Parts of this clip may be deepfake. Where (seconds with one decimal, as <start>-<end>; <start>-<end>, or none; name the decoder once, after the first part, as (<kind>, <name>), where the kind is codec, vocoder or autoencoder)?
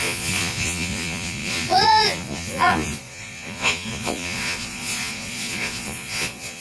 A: 0.0-6.6 (vocoder, Vocos)